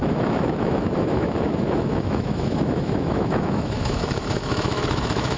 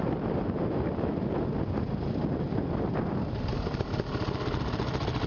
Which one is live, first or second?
second